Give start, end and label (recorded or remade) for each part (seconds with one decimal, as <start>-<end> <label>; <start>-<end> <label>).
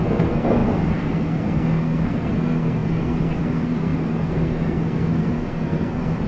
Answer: 0.0-6.3 remade